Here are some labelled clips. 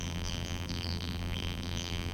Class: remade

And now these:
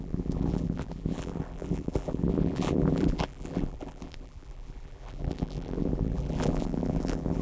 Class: remade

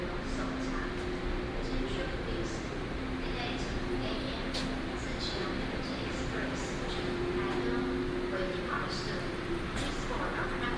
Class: recorded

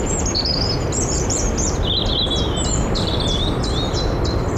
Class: remade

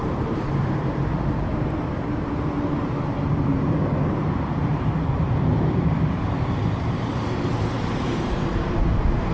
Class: remade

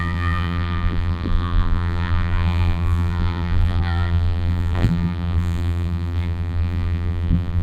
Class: remade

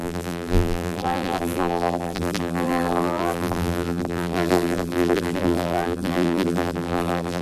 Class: remade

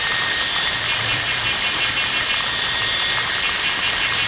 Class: remade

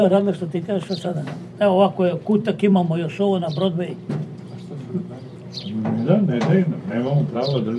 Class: remade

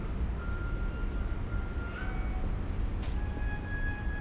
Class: recorded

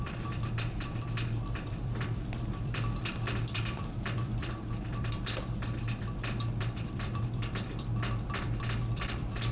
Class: remade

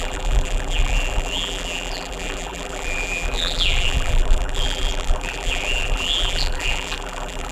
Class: remade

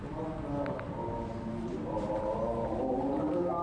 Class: recorded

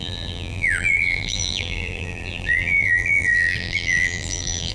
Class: remade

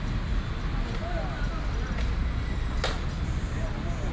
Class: recorded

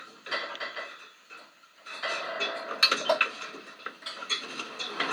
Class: recorded